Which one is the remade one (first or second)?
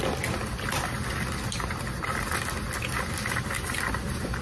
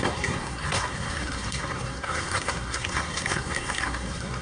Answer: second